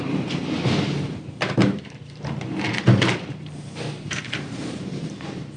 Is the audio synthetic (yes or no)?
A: yes